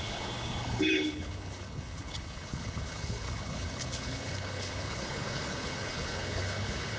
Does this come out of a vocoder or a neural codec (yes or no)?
yes